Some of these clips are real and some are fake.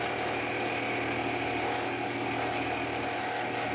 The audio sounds real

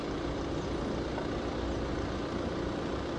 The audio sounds real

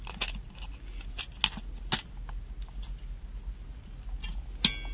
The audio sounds real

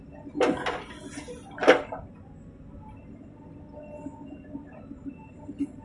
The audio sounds real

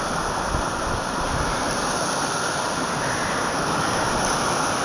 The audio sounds real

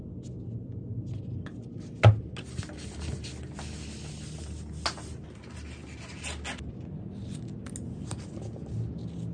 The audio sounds real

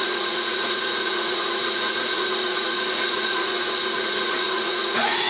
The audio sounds fake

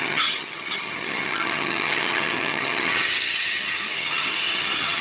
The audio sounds fake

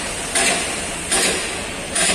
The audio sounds real